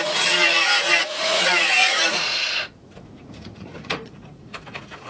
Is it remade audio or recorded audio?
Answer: remade